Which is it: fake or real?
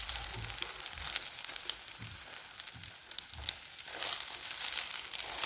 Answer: real